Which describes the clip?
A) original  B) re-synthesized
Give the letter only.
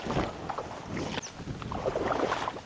A